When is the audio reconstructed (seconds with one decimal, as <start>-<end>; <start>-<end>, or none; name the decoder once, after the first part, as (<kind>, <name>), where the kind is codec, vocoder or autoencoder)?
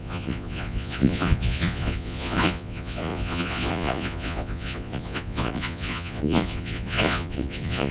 0.0-7.9 (vocoder, Vocos)